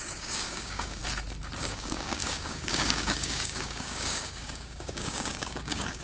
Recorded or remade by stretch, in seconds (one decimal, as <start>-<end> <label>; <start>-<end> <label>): 0.0-1.0 remade; 1.0-1.6 recorded; 1.6-6.0 remade

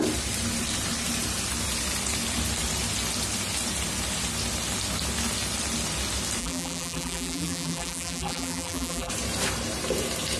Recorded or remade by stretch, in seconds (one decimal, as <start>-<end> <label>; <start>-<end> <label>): 0.0-6.4 recorded; 6.4-9.1 remade; 9.1-10.4 recorded

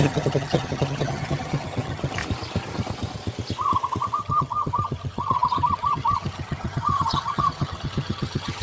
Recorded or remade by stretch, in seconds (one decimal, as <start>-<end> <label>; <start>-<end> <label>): 0.0-2.2 remade; 2.2-4.2 recorded; 4.2-8.6 remade

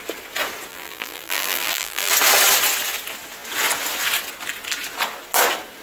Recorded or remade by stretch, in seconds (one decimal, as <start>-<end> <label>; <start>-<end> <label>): 0.0-0.7 recorded; 0.7-2.1 remade; 2.1-5.8 recorded

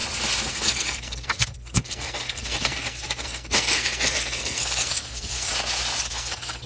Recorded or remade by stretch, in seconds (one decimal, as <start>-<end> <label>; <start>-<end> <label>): 0.0-0.5 recorded; 0.5-5.5 remade; 5.5-6.1 recorded; 6.1-6.7 remade

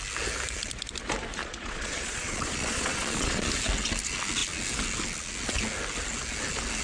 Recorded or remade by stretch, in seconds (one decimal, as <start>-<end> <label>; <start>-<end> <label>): 0.0-1.4 recorded; 1.4-3.5 remade; 3.5-6.8 recorded